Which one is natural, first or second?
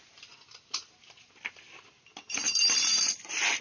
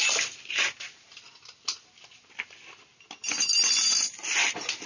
second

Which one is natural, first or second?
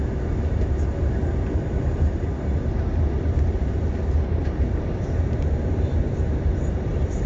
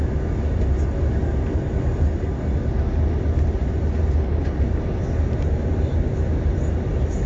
second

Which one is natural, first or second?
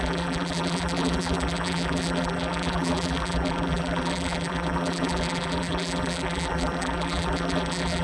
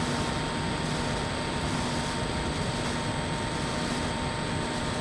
second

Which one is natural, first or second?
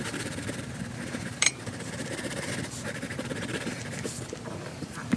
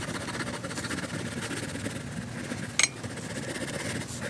second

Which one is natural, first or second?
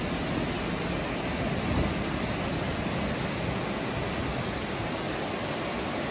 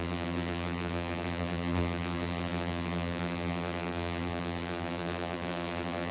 first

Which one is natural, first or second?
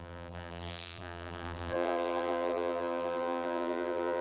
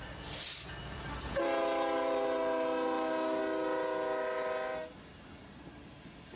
second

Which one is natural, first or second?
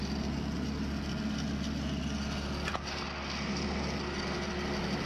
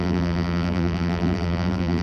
first